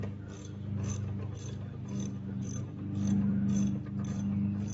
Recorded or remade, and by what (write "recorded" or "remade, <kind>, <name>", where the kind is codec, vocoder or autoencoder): recorded